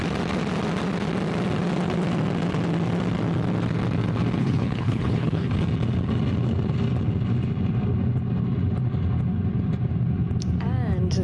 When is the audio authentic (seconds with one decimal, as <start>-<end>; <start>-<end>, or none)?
0.0-4.4; 5.5-11.2